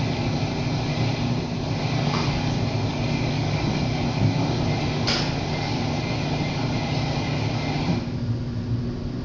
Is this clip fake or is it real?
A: real